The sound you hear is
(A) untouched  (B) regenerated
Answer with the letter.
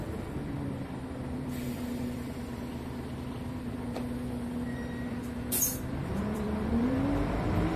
B